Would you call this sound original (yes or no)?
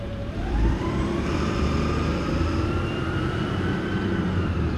no